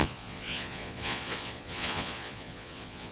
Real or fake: fake